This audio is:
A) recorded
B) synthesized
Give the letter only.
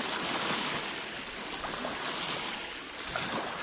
A